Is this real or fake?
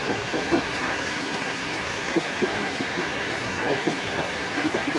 fake